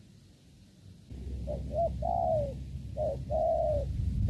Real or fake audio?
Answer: real